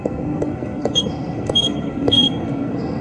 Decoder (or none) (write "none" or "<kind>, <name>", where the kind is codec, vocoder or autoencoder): codec, SNAC